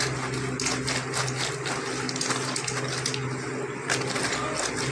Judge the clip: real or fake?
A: real